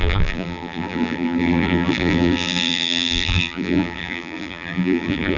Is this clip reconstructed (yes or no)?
yes